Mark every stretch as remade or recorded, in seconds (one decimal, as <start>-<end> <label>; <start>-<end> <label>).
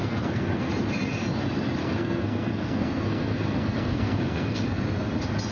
0.0-0.7 remade; 0.7-1.8 recorded; 1.8-4.8 remade; 4.8-5.5 recorded